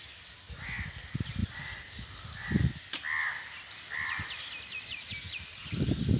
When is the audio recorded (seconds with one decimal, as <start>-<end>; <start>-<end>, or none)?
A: 0.0-6.2